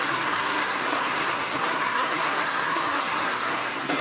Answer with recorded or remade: remade